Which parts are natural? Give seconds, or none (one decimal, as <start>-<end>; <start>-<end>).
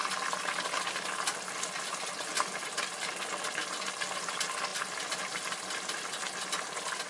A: 0.0-7.1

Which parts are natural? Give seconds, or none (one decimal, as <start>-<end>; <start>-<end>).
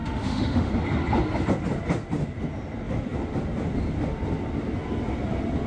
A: 0.7-5.7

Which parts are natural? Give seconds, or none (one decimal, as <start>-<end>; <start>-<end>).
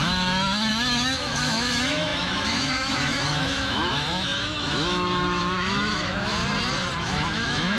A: 6.4-7.0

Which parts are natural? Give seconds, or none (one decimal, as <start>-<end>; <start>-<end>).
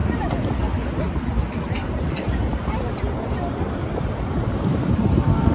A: 0.6-1.8; 5.1-5.5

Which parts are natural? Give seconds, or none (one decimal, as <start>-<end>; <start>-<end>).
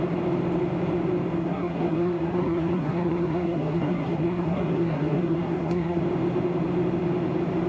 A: 0.0-1.4; 6.0-7.7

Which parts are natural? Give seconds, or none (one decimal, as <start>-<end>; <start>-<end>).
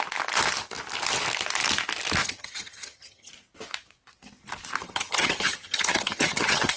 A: 0.0-2.2; 3.3-4.8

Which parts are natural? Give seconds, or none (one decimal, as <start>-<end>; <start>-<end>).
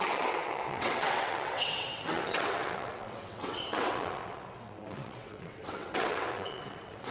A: none